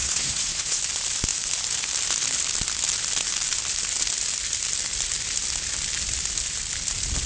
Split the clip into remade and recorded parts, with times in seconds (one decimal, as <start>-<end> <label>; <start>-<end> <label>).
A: 0.0-0.8 remade; 0.8-7.3 recorded